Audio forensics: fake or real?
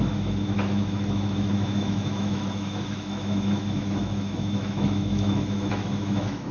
fake